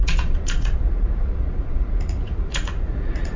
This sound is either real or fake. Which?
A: fake